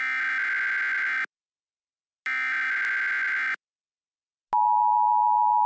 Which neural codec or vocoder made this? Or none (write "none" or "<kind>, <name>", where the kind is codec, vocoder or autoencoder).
none